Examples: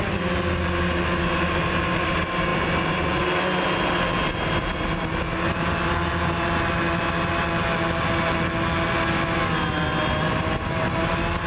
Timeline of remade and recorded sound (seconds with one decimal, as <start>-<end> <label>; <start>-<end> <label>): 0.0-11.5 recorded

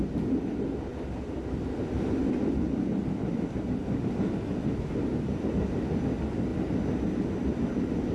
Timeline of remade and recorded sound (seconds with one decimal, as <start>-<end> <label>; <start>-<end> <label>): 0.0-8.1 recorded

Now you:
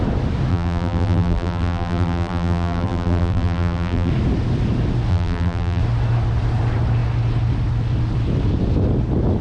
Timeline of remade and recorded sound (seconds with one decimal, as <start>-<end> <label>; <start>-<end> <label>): 0.0-0.5 recorded; 0.5-4.1 remade; 4.1-5.1 recorded; 5.1-5.8 remade; 5.8-9.4 recorded